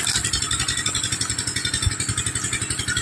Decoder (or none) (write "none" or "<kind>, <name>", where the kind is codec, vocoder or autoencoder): none